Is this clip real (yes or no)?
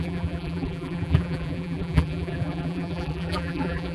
no